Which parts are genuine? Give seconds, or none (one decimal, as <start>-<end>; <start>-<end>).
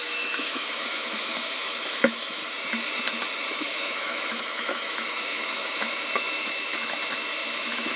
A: 2.4-3.5